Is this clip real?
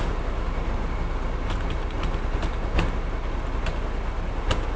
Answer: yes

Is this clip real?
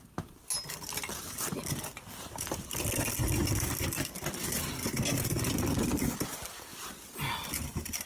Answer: yes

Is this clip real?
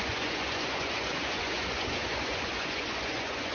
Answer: no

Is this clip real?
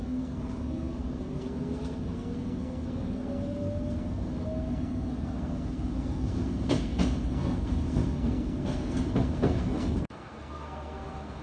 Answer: no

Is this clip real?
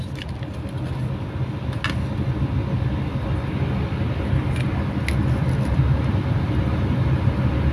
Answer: yes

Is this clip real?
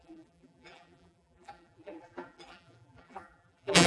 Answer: no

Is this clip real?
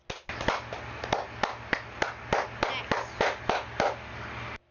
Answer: yes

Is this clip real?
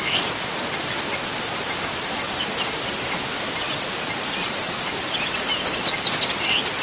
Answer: no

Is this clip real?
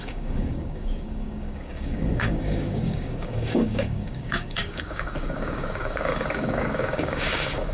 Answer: no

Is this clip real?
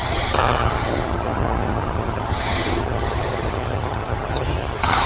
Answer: no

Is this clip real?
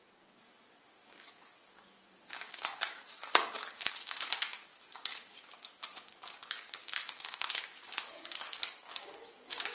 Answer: no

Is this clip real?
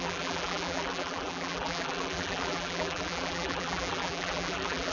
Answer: no